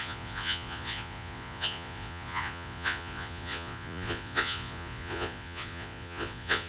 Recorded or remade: remade